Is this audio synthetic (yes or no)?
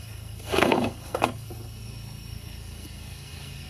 yes